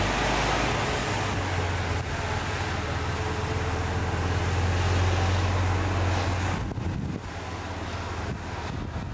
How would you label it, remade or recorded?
recorded